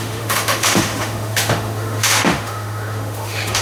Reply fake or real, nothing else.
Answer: fake